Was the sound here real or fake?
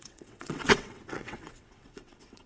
fake